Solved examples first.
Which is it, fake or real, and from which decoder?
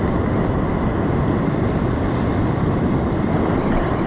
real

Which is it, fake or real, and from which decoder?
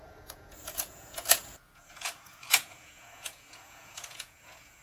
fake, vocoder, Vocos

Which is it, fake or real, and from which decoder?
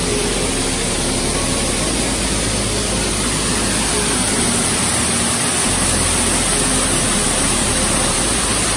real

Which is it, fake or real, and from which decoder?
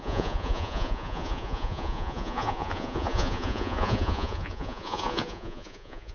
fake, vocoder, Vocos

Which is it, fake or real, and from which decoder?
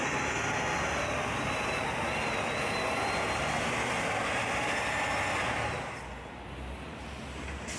real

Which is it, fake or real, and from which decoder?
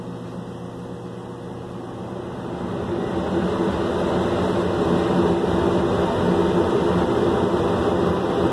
real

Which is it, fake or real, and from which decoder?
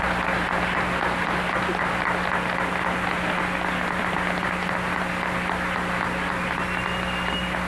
real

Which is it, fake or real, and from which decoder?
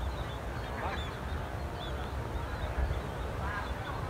real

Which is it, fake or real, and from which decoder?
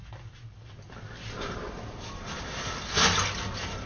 real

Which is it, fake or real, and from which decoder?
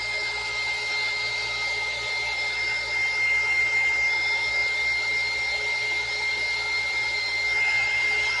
real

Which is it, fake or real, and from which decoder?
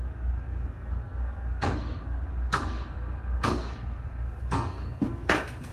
fake, codec, SNAC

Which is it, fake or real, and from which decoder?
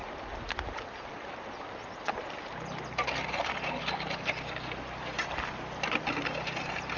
real